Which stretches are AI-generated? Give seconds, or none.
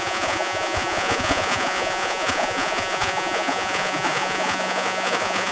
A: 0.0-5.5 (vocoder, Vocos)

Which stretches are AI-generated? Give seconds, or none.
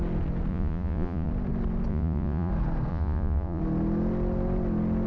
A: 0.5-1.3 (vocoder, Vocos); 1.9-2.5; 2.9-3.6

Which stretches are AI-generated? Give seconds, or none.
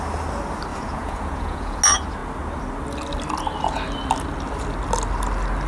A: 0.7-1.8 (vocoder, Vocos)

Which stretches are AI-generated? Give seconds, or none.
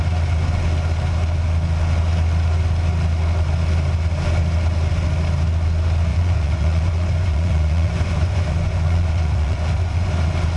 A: 6.1-10.1 (vocoder, Vocos)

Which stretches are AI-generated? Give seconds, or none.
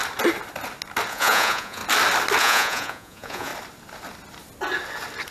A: 1.1-1.8 (vocoder, Vocos); 2.4-3.5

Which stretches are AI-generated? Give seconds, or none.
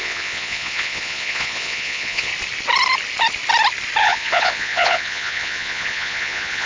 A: 0.0-2.3 (vocoder, Vocos); 4.0-6.7